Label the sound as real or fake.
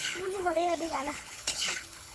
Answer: fake